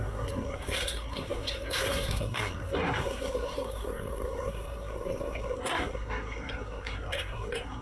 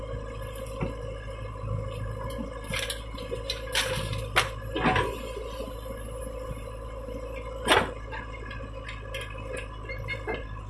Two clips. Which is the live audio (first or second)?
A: second